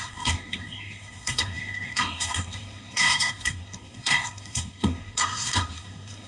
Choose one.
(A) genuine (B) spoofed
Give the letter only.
B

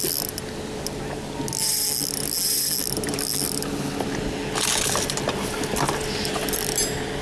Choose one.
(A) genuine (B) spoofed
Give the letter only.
A